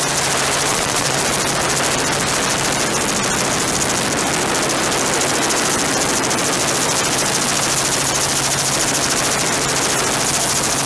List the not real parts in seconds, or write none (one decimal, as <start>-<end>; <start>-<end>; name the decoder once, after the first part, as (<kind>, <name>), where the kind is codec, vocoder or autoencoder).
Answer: 0.7-1.2 (vocoder, Vocos)

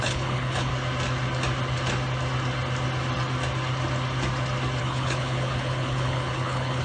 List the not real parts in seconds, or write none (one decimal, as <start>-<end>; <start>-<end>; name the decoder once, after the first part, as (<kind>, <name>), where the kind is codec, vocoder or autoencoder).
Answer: 0.0-0.7 (codec, HILCodec); 4.8-6.8

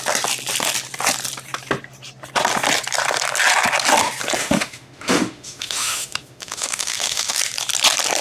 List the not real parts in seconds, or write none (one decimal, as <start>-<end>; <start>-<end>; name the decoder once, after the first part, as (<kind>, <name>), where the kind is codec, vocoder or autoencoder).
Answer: 4.4-7.4 (autoencoder, DAC-VAE)